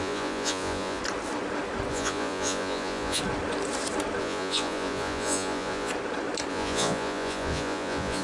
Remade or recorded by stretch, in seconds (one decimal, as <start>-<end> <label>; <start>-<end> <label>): 0.0-1.0 remade; 1.0-1.9 recorded; 1.9-3.2 remade; 3.2-4.2 recorded; 4.2-5.9 remade; 5.9-6.5 recorded; 6.5-8.2 remade